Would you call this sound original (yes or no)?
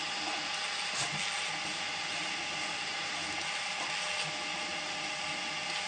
yes